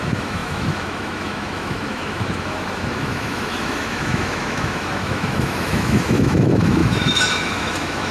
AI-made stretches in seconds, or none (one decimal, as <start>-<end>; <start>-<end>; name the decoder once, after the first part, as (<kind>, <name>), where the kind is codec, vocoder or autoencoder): 0.0-8.1 (autoencoder, DAC-VAE)